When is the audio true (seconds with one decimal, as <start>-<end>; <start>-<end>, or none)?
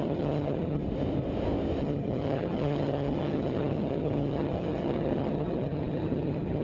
0.8-1.8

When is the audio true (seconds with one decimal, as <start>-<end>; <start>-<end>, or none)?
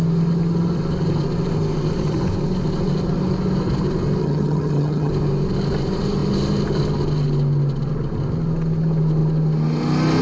0.0-4.2; 5.1-10.2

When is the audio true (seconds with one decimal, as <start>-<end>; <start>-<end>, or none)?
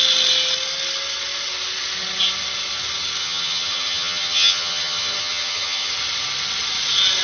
0.0-3.2; 5.9-7.2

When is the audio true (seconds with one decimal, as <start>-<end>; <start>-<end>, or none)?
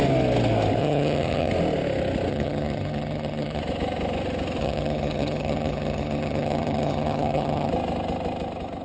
0.0-0.8; 1.5-2.3; 3.6-4.6; 7.7-8.8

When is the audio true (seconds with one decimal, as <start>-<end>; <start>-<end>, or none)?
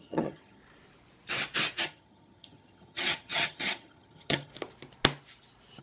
0.6-1.8; 4.5-5.8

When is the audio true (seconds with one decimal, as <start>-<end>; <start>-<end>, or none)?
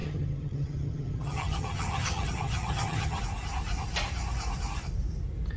3.2-5.6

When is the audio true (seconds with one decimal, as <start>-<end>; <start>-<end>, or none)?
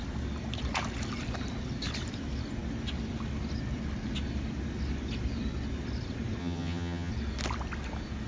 0.0-6.4; 7.1-8.3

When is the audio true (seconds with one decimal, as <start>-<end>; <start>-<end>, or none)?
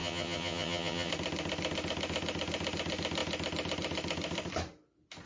1.1-5.3